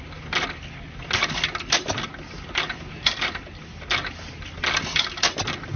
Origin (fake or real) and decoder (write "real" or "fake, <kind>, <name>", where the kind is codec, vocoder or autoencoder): real